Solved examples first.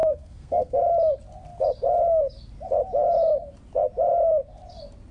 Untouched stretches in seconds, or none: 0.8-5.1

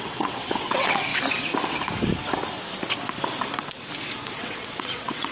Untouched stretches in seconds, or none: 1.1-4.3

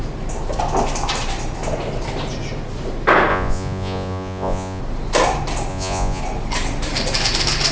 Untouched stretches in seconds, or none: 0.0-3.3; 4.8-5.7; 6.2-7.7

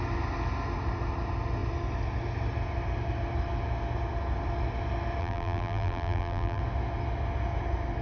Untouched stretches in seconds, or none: 0.0-5.2; 6.6-8.0